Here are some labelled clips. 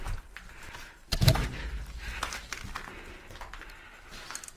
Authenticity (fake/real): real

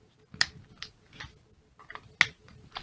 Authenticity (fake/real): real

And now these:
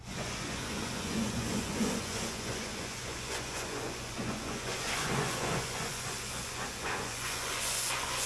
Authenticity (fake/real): fake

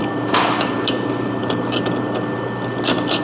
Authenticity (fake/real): real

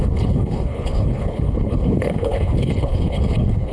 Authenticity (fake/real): fake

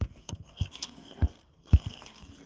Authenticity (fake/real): fake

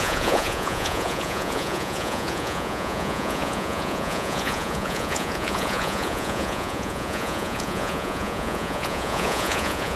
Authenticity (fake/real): fake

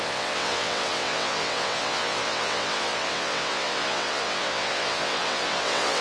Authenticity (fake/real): fake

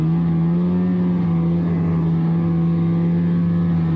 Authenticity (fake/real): real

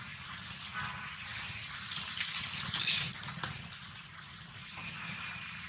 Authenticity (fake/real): real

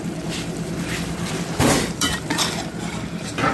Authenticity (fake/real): fake